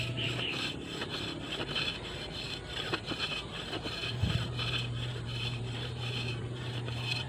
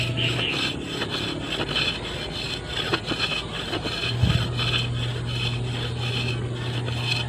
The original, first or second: second